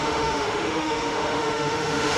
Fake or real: fake